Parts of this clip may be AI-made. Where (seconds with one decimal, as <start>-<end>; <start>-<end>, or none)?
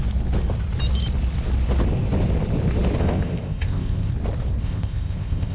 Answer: 3.0-4.1; 4.6-5.5